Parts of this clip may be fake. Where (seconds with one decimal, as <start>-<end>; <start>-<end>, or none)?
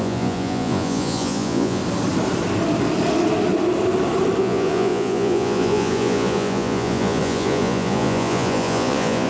0.0-1.8; 4.4-9.3